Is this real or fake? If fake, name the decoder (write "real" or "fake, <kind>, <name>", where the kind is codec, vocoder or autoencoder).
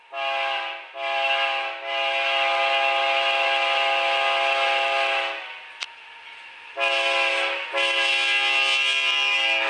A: real